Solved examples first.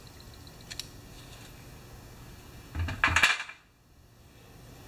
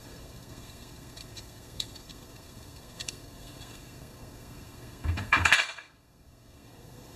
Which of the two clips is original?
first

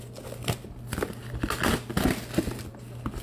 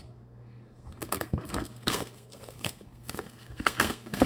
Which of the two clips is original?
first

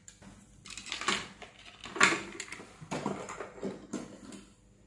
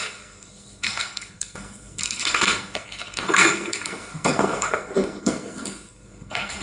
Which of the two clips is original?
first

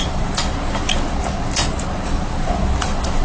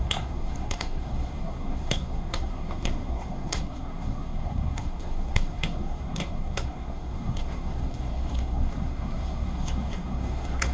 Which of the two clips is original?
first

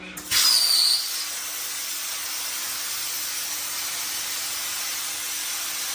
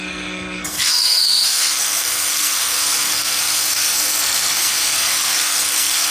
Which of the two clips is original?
first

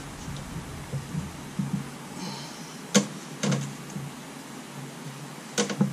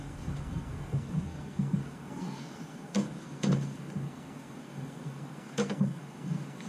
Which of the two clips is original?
first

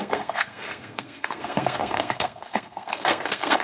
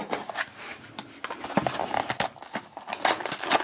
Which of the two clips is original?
second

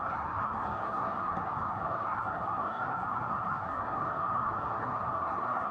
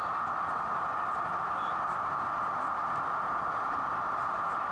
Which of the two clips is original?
second